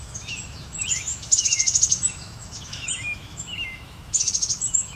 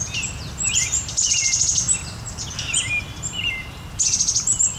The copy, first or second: first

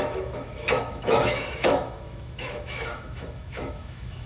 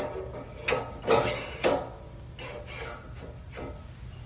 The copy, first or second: first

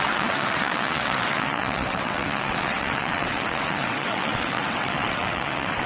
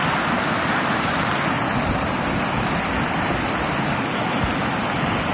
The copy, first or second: first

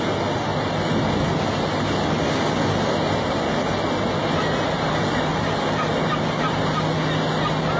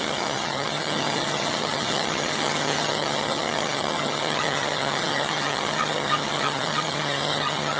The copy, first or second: second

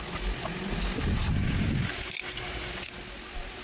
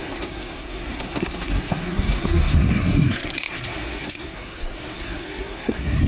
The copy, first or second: second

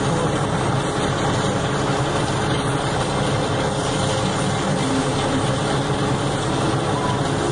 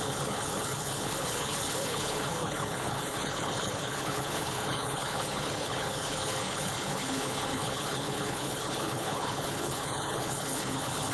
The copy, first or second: second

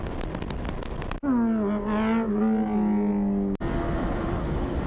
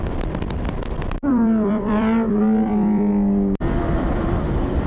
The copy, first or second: second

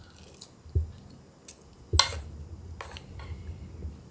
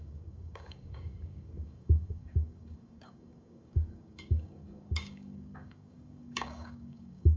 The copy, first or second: second